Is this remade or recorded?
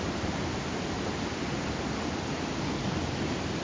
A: recorded